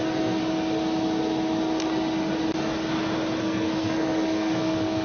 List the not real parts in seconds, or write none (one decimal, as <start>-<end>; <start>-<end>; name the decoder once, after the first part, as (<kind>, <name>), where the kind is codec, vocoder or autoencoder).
0.0-0.4 (codec, SNAC); 3.4-5.0